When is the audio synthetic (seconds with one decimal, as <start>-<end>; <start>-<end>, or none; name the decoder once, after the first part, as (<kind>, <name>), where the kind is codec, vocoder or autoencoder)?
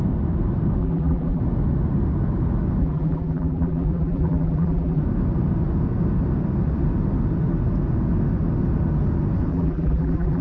0.8-1.4 (vocoder, BigVGAN v2); 2.8-5.0; 9.5-10.4